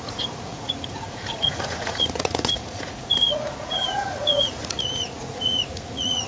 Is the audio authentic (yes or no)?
no